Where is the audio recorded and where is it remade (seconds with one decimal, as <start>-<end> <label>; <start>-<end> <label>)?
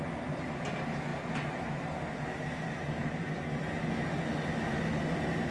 0.0-5.5 recorded